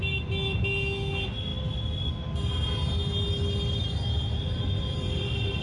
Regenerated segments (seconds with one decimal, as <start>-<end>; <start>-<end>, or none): none